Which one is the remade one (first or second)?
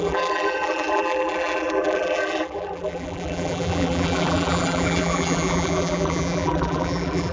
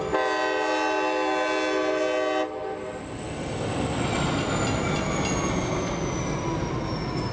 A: first